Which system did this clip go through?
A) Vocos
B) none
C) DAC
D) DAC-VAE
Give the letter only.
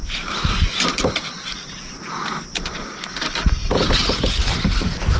B